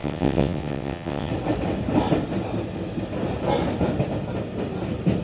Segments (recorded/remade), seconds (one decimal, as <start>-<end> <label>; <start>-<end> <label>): 0.0-1.3 remade; 1.3-5.2 recorded